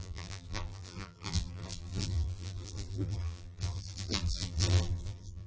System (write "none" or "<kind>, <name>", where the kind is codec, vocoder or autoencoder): vocoder, BigVGAN v2